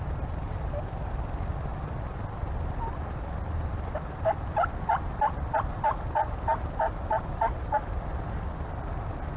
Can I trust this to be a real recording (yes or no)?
yes